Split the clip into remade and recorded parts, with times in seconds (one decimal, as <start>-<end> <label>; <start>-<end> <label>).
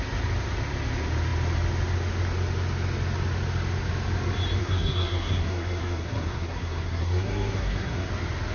0.0-4.6 recorded; 4.6-8.1 remade; 8.1-8.5 recorded